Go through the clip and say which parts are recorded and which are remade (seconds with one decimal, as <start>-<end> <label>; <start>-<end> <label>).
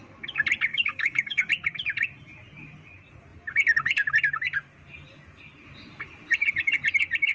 0.0-0.7 recorded; 0.7-1.5 remade; 1.5-7.3 recorded